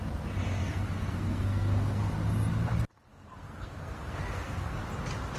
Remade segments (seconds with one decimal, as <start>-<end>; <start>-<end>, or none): 0.6-2.1; 3.1-4.8